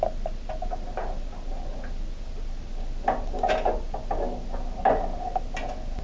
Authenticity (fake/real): real